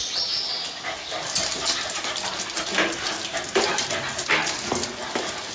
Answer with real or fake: real